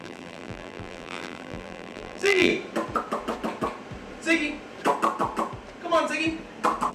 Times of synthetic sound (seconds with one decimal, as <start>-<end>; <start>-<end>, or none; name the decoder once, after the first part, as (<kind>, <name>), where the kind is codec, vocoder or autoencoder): 0.0-2.5 (vocoder, BigVGAN v2)